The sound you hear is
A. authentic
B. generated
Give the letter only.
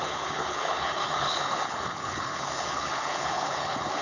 B